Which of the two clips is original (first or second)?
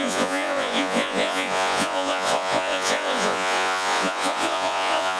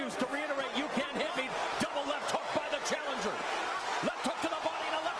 second